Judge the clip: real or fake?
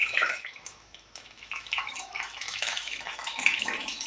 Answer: fake